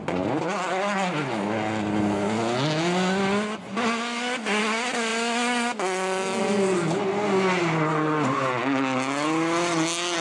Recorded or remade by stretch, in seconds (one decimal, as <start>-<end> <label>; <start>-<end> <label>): 0.0-10.2 recorded